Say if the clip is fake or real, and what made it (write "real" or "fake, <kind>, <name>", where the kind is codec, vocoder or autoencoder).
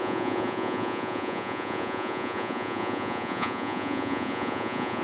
fake, vocoder, Vocos